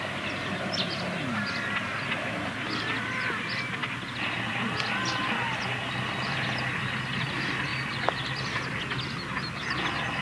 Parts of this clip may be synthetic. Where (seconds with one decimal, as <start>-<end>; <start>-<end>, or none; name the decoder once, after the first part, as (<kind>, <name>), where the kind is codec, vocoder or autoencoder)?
none